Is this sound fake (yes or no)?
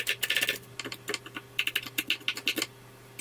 no